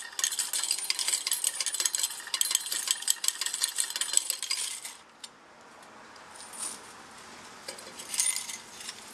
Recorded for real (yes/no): yes